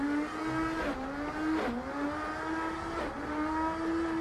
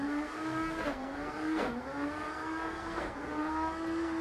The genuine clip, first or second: first